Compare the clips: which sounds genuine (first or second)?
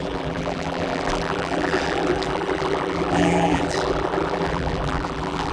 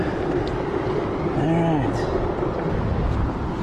second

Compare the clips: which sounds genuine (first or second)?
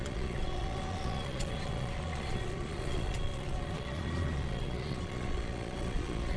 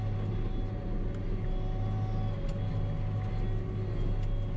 second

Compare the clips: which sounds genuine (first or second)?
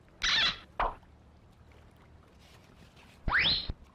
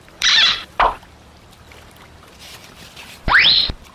first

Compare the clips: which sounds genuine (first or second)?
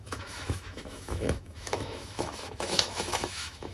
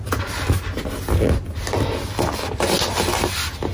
second